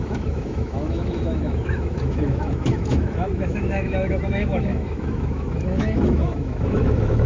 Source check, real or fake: fake